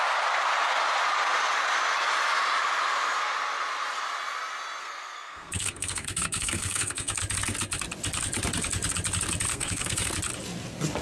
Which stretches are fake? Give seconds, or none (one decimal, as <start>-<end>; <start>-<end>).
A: 4.8-7.1; 9.5-10.1